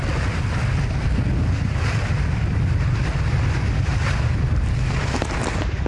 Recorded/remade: recorded